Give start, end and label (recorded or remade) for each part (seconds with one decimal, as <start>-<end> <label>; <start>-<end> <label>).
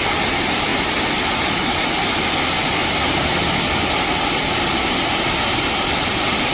0.0-6.5 recorded